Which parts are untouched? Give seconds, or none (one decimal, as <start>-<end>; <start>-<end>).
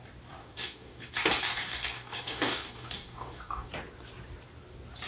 0.0-0.4; 1.1-1.5; 3.7-5.1